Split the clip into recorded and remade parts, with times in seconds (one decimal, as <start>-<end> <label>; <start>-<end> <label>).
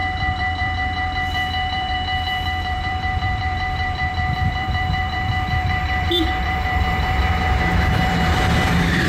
0.0-9.1 remade